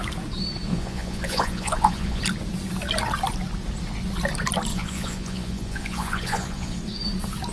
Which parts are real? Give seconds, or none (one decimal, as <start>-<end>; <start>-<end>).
0.0-0.7; 2.2-4.7; 6.8-7.5